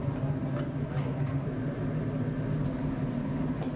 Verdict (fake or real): real